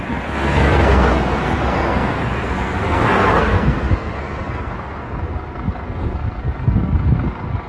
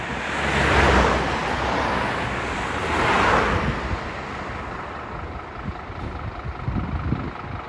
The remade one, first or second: first